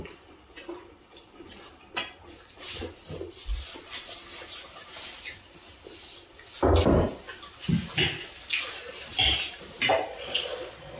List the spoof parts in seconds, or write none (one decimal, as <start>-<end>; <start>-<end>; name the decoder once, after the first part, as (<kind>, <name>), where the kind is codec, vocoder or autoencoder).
10.1-11.0 (vocoder, Vocos)